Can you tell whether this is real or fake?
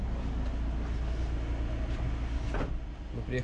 real